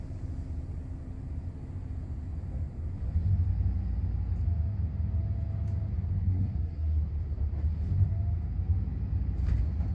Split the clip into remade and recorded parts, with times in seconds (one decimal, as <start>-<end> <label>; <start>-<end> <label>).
0.0-6.2 recorded; 6.2-7.0 remade; 7.0-9.9 recorded